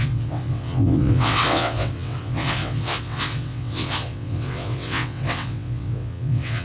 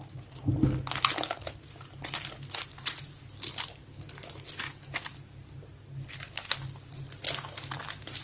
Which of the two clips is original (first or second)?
second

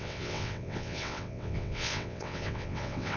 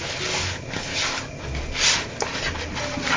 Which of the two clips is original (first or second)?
second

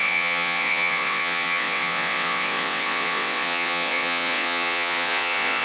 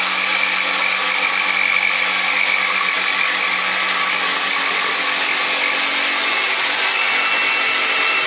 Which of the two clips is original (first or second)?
second